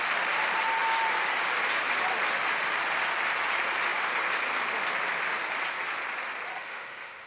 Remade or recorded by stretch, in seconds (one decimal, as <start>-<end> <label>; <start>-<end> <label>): 0.0-6.5 recorded; 6.5-7.3 remade